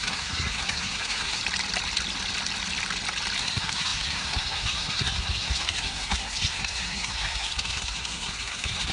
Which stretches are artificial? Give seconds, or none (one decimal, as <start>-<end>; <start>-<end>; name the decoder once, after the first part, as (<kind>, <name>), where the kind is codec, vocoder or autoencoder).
0.0-1.4 (codec, SNAC); 3.4-8.9